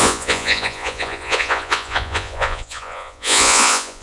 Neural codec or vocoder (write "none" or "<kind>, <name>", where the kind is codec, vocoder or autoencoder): vocoder, Vocos